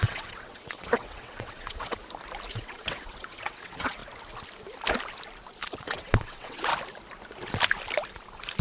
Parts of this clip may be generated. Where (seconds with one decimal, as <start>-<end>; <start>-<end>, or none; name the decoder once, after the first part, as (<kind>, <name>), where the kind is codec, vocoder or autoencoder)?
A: 0.0-2.0 (vocoder, WaveNeXt); 2.5-4.0; 5.8-6.7